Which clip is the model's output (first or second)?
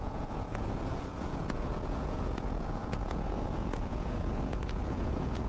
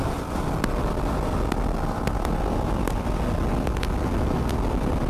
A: first